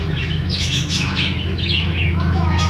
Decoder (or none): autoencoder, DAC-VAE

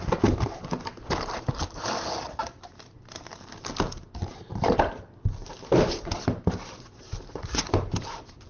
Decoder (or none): none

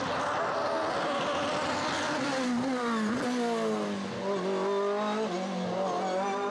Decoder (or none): none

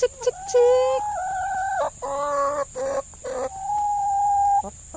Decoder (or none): none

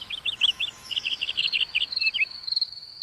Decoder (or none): autoencoder, DAC-VAE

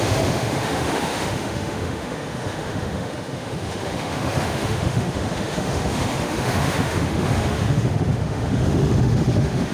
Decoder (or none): autoencoder, DAC-VAE